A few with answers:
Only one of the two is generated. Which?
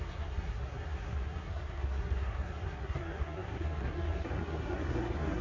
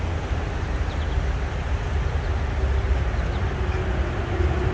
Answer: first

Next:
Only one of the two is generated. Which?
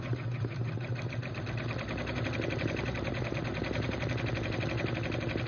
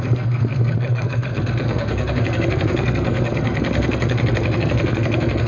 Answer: second